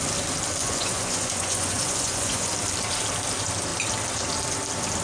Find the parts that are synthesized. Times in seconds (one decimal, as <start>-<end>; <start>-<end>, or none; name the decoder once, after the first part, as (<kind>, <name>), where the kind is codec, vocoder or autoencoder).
0.6-2.5 (vocoder, Vocos)